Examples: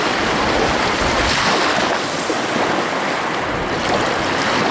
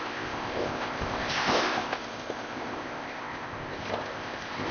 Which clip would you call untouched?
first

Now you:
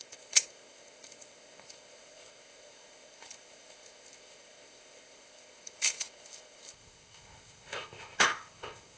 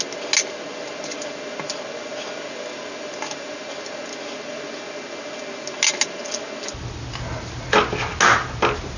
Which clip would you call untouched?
second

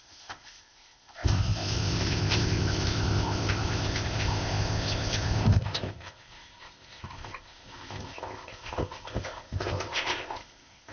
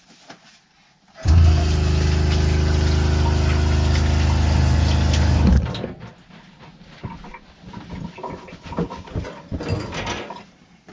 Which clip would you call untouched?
second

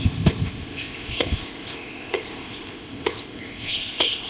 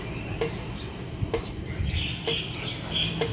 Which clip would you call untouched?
second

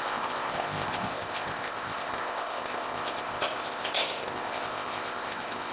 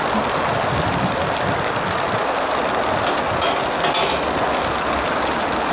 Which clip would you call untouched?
second